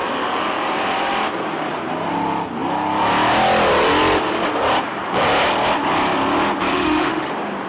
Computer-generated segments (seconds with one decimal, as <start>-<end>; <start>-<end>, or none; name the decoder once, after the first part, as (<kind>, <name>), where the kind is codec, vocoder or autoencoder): 6.7-7.3 (autoencoder, DAC-VAE)